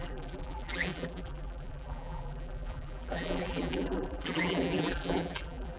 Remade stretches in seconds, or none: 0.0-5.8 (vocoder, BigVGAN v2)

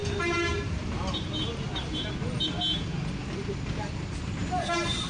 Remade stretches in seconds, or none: none

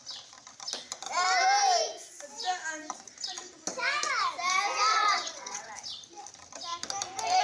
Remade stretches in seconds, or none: 4.9-5.7 (vocoder, WaveNeXt)

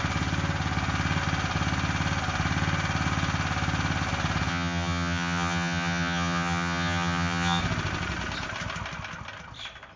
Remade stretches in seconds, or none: 4.5-7.6 (vocoder, HiFi-GAN)